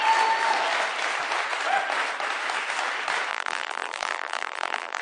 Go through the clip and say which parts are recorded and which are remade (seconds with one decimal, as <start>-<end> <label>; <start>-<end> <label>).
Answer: 0.0-3.3 recorded; 3.3-5.0 remade